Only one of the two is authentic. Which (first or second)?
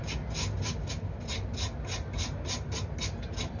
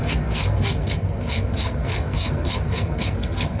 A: first